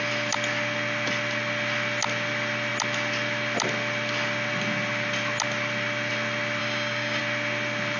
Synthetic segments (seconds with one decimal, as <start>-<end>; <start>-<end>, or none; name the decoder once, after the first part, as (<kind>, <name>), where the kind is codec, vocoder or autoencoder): 6.6-7.2 (codec, DAC)